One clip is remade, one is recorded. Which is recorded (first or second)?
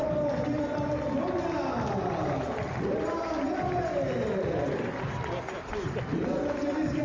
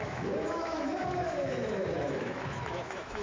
first